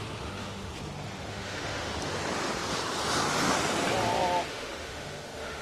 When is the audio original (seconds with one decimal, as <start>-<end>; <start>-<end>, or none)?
0.7-1.3; 1.9-4.5